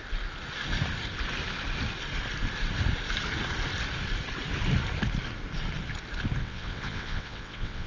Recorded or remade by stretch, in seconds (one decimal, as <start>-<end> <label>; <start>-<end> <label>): 0.0-6.4 recorded; 6.4-7.9 remade